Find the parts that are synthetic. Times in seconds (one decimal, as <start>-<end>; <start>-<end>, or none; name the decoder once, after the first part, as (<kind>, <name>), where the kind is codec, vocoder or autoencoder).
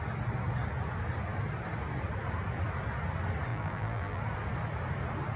3.5-4.2 (vocoder, BigVGAN v2)